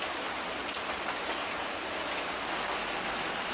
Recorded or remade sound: recorded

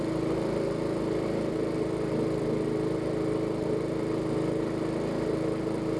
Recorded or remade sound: recorded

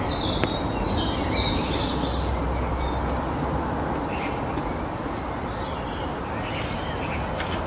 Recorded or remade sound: recorded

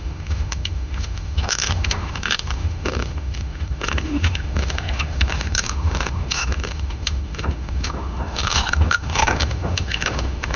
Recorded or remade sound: remade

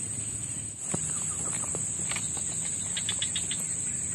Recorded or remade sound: recorded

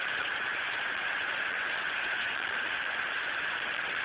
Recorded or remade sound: remade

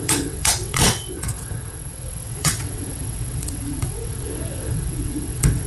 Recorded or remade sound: remade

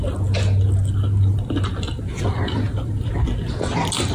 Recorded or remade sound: recorded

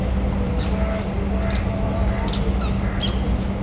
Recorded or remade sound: recorded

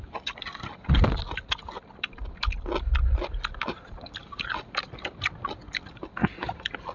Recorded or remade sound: recorded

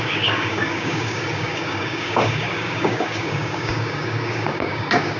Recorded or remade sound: remade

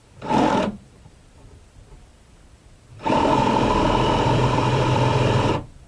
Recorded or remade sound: remade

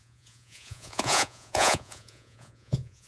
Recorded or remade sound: remade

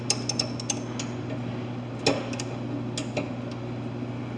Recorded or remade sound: recorded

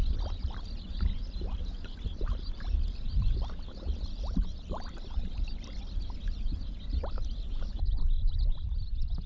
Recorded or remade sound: recorded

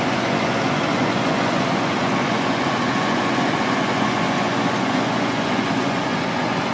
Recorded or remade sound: remade